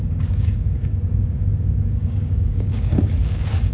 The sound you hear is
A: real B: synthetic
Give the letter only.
B